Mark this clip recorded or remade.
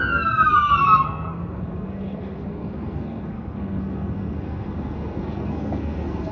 remade